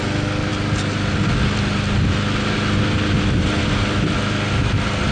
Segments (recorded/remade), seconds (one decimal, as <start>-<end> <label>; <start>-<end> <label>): 0.0-5.1 recorded